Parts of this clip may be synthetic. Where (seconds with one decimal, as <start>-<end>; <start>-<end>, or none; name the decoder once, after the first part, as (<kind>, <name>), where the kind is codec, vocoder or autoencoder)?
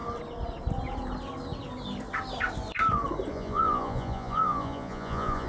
3.3-5.5 (vocoder, Vocos)